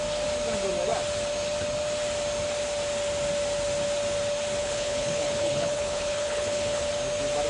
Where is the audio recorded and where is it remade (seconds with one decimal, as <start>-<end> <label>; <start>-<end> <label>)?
0.0-4.6 recorded; 4.6-6.9 remade; 6.9-7.5 recorded

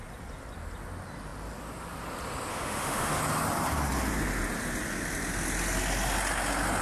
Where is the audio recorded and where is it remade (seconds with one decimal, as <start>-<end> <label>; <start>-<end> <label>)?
0.0-2.5 recorded; 2.5-3.2 remade; 3.2-6.8 recorded

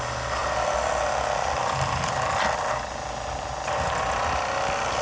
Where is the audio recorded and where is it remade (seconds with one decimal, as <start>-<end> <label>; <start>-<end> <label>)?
0.0-5.0 recorded

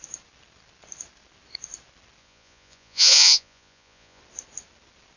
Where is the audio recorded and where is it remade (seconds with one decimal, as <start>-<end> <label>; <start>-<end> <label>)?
0.0-2.2 recorded; 2.2-4.2 remade; 4.2-5.2 recorded

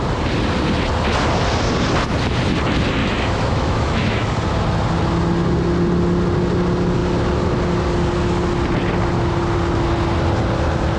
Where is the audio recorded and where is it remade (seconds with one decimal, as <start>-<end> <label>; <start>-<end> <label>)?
0.0-3.0 recorded; 3.0-4.3 remade; 4.3-11.0 recorded

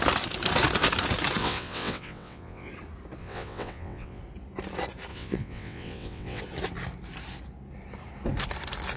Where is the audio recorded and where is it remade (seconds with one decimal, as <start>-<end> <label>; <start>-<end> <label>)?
0.0-1.4 recorded; 1.4-2.7 remade; 2.7-3.2 recorded; 3.2-4.2 remade; 4.2-5.1 recorded; 5.1-6.4 remade; 6.4-9.0 recorded